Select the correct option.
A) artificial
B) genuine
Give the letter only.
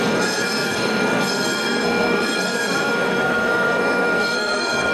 A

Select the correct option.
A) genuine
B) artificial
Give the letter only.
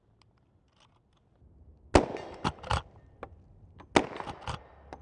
A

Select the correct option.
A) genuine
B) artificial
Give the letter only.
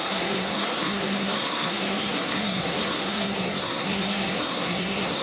B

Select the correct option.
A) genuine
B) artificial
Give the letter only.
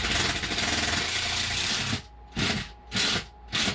A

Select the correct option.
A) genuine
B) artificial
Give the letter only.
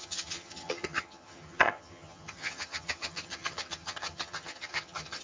B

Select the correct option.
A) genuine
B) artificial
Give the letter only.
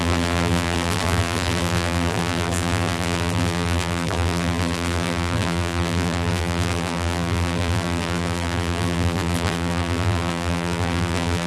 B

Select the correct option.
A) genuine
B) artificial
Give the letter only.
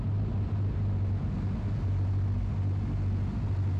A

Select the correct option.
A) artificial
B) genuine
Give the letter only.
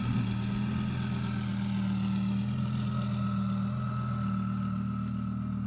B